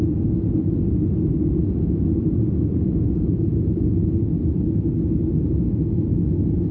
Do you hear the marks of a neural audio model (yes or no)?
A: no